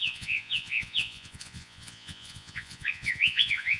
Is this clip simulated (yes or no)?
yes